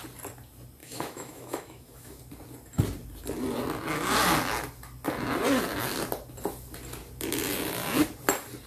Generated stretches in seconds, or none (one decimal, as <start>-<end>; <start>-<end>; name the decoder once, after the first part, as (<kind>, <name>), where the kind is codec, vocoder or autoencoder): 0.8-2.2 (autoencoder, DAC-VAE)